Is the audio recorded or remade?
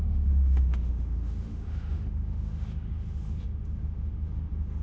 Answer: remade